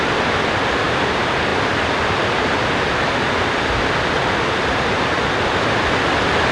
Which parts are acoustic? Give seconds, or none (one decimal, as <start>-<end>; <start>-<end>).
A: 0.0-6.5